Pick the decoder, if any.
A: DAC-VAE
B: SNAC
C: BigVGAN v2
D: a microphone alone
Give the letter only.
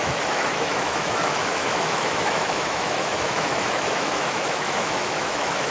A